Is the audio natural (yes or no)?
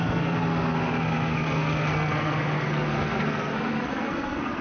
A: no